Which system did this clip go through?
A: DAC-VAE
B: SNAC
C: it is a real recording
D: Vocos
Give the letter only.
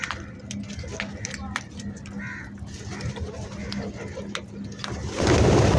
C